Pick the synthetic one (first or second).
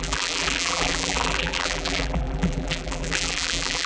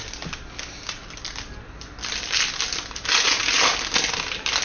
first